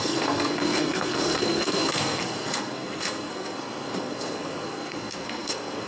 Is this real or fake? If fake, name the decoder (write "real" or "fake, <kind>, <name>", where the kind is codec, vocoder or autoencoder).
fake, codec, SNAC